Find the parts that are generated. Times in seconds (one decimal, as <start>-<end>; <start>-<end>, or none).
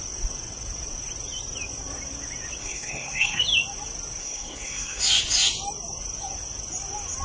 2.6-3.4; 4.2-5.0